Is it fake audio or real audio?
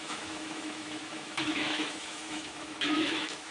fake